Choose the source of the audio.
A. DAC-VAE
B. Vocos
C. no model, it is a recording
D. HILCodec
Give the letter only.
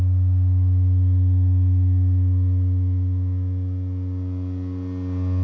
C